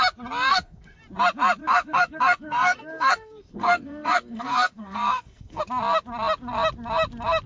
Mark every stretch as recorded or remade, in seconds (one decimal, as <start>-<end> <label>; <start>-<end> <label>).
0.0-0.5 recorded; 0.5-1.0 remade; 1.0-1.6 recorded; 1.6-5.6 remade; 5.6-7.5 recorded